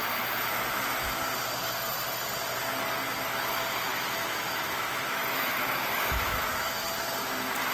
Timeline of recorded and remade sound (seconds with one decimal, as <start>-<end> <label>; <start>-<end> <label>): 0.0-3.9 recorded; 3.9-6.5 remade; 6.5-7.7 recorded